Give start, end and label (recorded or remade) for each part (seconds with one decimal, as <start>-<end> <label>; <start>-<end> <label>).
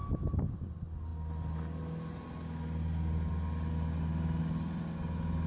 0.0-5.5 recorded